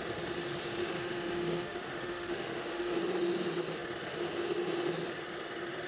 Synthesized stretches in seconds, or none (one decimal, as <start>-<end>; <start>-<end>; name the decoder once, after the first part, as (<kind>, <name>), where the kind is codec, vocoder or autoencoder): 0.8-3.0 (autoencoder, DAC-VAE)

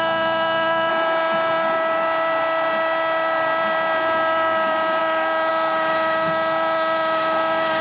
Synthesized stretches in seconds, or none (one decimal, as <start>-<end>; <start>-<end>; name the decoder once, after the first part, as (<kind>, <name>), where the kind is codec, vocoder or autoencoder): 0.0-0.9 (autoencoder, DAC-VAE); 5.0-7.8

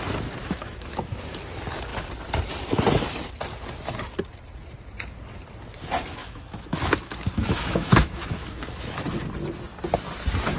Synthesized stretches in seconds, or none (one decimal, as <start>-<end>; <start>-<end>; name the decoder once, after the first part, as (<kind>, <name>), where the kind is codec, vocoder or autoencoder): 0.4-1.3 (autoencoder, DAC-VAE); 6.2-9.0

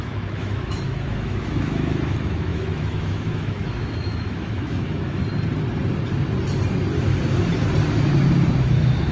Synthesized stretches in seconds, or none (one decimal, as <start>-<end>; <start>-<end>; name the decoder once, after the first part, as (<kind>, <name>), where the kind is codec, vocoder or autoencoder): 0.0-5.2 (autoencoder, DAC-VAE); 8.6-9.1